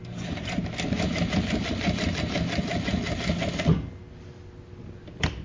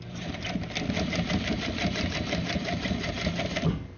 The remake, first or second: second